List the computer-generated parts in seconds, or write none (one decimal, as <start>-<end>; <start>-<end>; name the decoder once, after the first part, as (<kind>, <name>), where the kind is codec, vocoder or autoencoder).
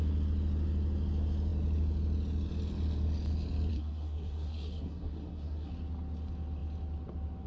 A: 3.7-5.7 (codec, SNAC)